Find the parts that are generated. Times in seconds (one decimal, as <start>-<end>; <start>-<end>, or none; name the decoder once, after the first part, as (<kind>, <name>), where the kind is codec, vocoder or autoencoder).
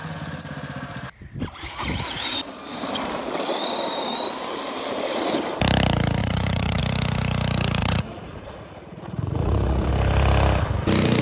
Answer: 6.2-6.8 (vocoder, Vocos); 7.8-9.9